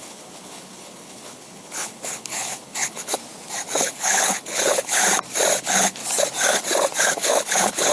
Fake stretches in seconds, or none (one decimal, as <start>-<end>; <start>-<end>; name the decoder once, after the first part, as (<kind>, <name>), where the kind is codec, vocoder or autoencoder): 0.0-3.2 (codec, HILCodec); 3.8-5.0; 5.6-6.0; 7.0-7.9